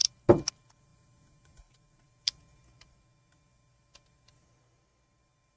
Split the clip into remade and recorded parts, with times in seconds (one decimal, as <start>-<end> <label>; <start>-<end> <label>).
0.0-5.6 recorded